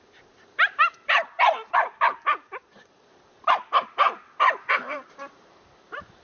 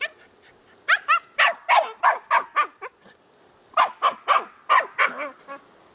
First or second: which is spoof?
first